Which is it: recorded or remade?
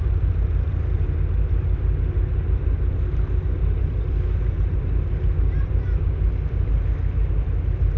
remade